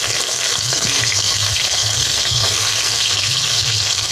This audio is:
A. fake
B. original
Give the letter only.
A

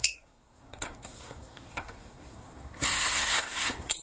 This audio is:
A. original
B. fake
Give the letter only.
B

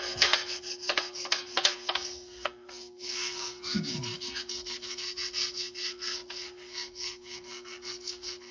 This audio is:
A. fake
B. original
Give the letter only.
A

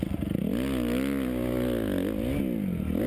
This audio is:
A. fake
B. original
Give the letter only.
B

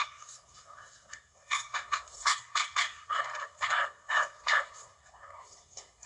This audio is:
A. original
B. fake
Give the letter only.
B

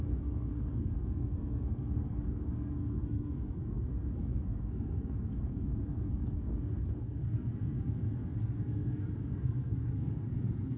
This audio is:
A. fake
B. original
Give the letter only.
A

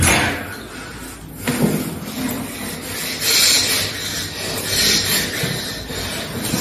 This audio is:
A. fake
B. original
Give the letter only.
B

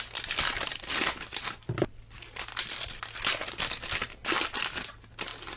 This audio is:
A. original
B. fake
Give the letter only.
A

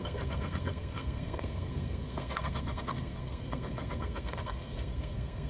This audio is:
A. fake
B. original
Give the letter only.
A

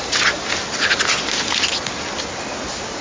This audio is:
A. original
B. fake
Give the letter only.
A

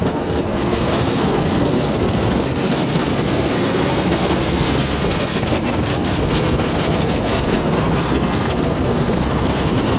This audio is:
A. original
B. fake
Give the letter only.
B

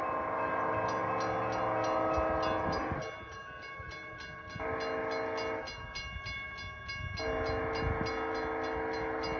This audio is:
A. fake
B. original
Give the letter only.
B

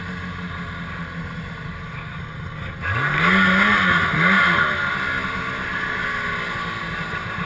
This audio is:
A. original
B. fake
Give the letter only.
A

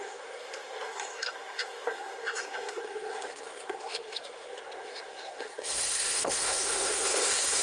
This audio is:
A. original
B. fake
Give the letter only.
B